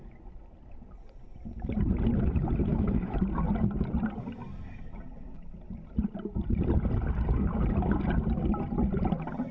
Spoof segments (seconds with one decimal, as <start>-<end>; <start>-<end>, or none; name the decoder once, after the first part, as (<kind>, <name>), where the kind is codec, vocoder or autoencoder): 2.7-3.2 (autoencoder, DAC-VAE)